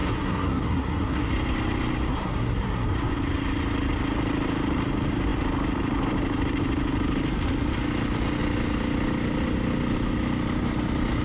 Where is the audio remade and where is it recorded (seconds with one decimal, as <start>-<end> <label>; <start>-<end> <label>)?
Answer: 0.0-1.3 remade; 1.3-2.1 recorded; 2.1-2.9 remade; 2.9-11.2 recorded